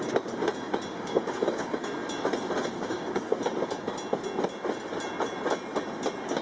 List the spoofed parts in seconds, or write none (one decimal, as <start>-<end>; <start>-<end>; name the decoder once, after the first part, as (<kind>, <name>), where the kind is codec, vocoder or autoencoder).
0.9-1.9 (codec, DAC); 2.6-3.4